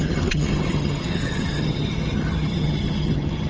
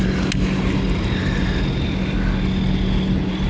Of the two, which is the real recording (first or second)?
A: second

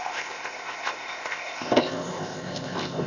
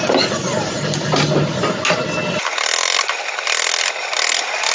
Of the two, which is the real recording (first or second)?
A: second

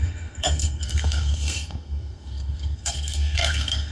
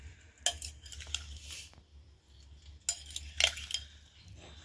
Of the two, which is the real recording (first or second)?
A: second